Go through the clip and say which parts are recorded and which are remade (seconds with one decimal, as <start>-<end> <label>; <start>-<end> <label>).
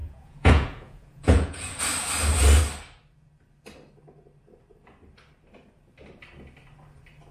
0.0-1.8 remade; 1.8-7.3 recorded